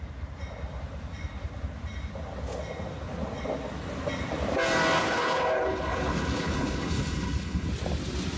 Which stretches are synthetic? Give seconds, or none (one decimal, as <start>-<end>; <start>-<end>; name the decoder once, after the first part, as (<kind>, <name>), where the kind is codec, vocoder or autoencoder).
5.0-7.7 (codec, HILCodec)